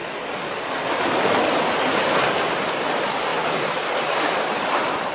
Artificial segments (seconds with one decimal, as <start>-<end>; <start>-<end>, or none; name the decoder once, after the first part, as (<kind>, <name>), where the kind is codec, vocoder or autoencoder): 3.3-5.1 (vocoder, BigVGAN v2)